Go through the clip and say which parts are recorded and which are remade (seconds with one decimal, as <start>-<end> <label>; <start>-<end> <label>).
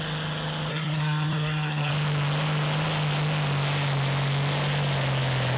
0.0-0.7 recorded; 0.7-1.9 remade; 1.9-5.6 recorded